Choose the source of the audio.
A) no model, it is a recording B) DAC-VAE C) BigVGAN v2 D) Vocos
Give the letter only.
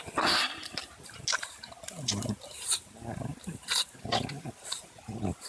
A